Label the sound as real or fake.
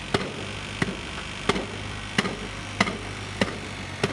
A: real